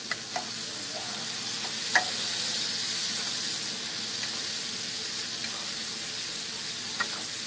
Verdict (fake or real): real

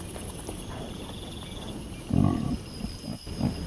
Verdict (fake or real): real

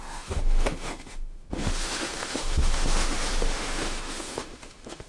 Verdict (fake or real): fake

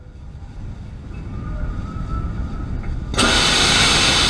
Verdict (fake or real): real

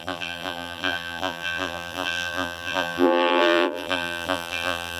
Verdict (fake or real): fake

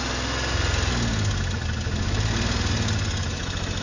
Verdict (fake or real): real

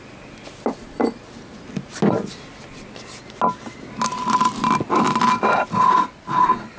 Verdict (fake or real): real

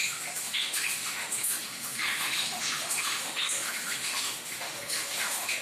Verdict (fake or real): fake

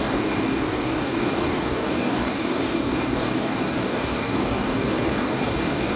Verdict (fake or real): fake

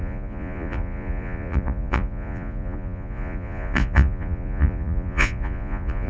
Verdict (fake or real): fake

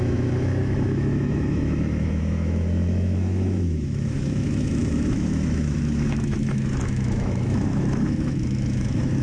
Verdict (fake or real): fake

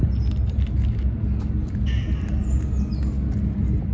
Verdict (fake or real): real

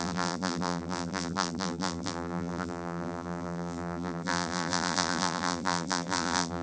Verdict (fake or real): fake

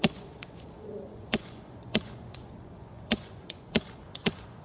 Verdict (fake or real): fake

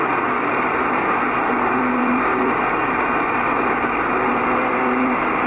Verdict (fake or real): fake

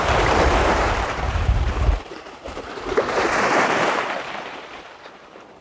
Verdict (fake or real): fake